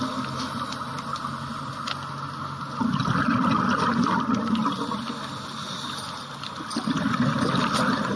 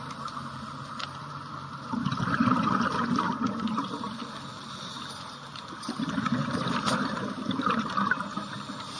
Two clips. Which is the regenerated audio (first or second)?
second